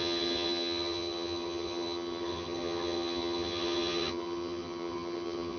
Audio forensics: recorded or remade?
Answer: remade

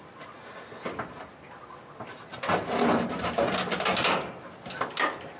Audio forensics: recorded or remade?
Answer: recorded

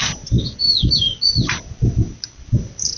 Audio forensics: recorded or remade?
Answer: recorded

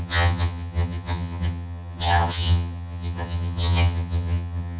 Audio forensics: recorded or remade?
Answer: remade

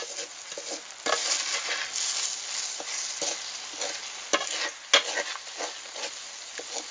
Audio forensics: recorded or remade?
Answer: recorded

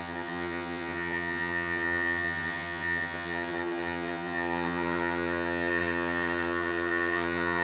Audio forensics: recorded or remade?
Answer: remade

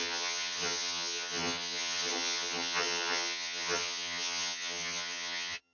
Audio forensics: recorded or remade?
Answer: remade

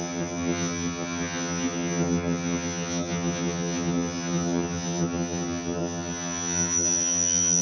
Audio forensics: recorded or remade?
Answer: remade